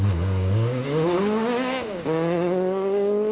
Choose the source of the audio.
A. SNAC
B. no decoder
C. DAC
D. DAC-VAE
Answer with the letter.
C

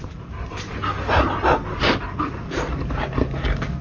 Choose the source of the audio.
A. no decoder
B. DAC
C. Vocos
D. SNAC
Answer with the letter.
A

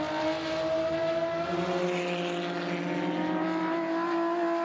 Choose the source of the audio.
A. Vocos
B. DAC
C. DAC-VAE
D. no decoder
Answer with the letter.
D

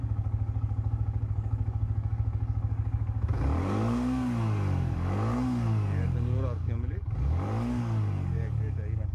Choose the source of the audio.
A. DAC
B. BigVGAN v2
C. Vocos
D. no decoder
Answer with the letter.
A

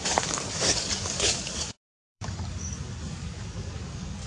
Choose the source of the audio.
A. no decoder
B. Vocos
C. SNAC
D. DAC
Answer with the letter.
D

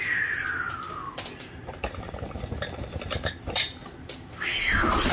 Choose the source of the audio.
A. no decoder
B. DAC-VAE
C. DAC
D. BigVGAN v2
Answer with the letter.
A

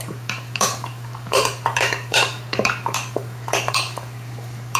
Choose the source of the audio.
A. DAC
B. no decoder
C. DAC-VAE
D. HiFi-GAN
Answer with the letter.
A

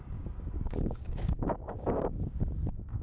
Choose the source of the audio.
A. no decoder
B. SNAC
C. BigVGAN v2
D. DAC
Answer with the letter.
D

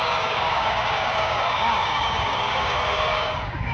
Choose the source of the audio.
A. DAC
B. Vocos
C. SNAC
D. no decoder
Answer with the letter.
A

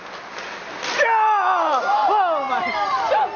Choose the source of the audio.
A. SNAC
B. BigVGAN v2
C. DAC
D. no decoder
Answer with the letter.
D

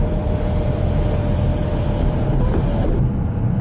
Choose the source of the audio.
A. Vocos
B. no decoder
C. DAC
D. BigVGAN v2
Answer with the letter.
B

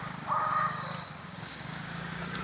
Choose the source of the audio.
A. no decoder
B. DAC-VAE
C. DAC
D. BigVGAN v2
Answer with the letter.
C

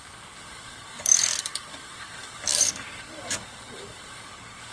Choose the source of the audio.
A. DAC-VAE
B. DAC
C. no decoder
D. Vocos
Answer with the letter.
B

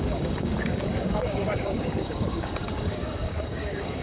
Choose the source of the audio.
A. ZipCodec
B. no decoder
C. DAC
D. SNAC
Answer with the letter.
C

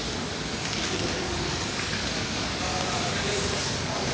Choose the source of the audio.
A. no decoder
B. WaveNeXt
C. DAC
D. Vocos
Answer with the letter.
C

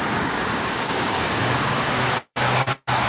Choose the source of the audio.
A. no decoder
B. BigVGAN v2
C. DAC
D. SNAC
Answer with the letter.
C